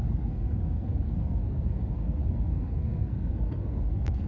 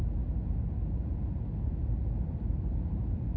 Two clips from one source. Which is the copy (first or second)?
first